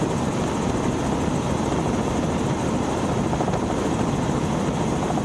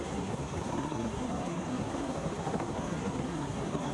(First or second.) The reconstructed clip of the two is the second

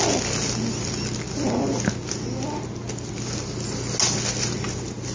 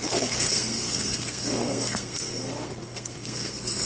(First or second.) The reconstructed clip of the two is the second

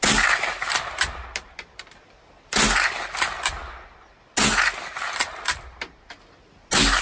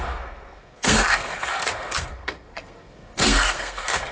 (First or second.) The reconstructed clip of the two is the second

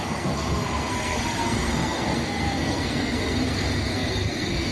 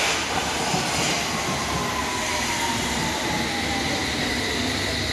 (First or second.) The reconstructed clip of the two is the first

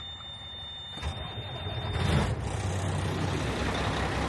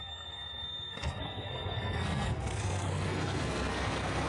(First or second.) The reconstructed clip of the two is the second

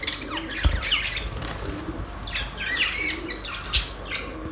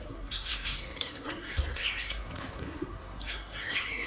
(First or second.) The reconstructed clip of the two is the second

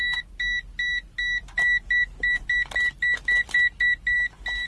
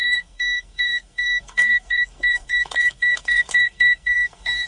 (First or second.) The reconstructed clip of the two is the second